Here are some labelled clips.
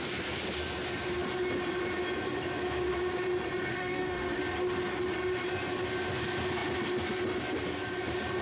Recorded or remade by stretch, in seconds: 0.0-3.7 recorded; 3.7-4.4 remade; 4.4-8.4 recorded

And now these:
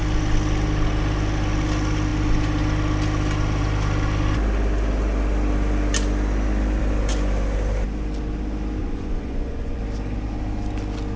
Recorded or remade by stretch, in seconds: 0.0-8.8 recorded; 8.8-9.8 remade; 9.8-11.2 recorded